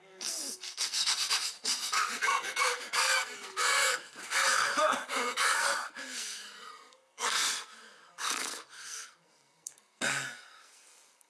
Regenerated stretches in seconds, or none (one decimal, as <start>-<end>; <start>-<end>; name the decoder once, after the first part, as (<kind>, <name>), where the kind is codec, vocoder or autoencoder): 0.0-11.3 (codec, SNAC)